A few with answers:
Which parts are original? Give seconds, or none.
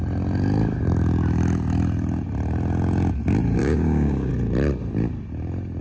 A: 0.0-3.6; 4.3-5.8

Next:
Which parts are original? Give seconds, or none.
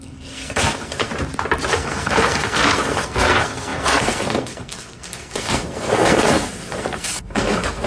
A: 1.1-1.7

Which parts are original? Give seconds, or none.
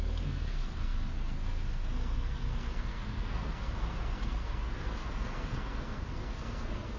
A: none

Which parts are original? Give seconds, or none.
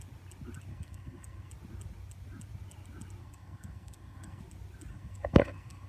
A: 0.0-0.7; 1.5-3.2; 4.4-4.9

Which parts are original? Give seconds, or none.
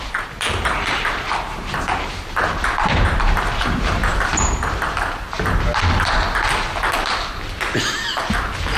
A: 4.0-8.8